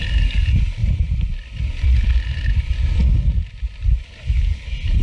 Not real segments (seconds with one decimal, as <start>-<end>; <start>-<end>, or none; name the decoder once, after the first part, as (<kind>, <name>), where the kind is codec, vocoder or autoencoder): none